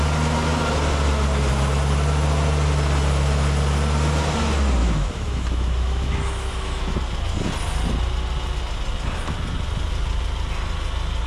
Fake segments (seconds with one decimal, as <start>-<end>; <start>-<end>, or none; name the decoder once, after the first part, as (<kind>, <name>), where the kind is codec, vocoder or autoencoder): 4.8-7.0 (autoencoder, DAC-VAE)